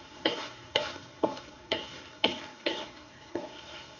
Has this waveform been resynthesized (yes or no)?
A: yes